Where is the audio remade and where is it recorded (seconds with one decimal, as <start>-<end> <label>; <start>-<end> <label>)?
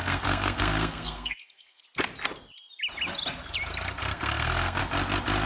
0.0-1.8 remade; 1.8-4.0 recorded; 4.0-4.8 remade; 4.8-5.5 recorded